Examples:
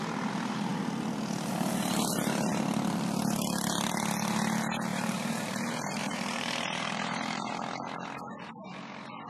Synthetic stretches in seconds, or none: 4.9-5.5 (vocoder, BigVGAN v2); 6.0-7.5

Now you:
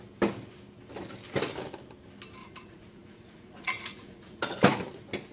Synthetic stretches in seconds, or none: 2.4-4.6 (vocoder, Vocos)

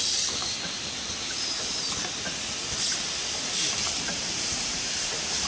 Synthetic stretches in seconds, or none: 0.0-0.4 (vocoder, BigVGAN v2); 3.7-5.5